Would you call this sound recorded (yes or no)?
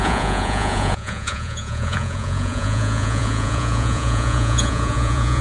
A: no